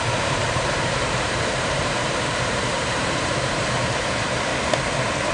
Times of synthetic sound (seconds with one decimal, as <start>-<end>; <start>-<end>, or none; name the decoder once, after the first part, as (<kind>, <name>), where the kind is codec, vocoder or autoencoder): 0.0-4.5 (vocoder, BigVGAN v2)